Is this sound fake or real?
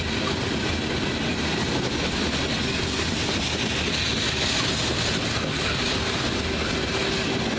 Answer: real